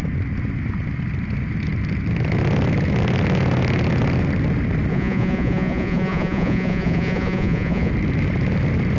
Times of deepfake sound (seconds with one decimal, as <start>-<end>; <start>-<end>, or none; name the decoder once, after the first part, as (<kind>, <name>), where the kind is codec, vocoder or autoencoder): 4.9-7.9 (vocoder, Vocos)